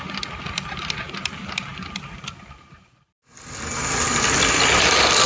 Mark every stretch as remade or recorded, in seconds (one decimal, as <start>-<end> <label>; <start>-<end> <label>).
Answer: 0.0-5.3 recorded